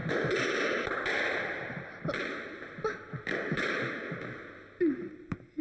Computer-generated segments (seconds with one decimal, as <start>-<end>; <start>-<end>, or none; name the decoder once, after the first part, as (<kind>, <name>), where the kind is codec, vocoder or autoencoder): 1.1-2.2 (vocoder, BigVGAN v2); 3.4-4.4; 5.0-5.6